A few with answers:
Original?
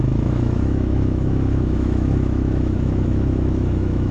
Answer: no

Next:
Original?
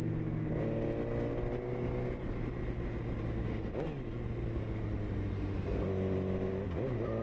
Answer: yes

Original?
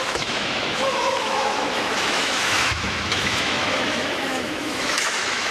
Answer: no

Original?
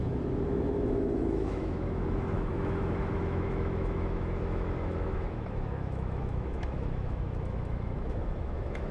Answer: no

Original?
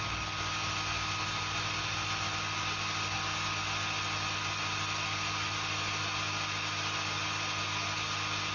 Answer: yes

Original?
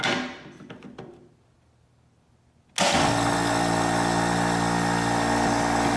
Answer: yes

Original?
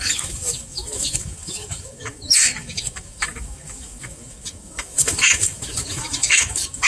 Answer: no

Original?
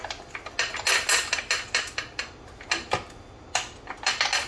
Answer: yes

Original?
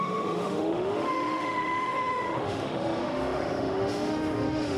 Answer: no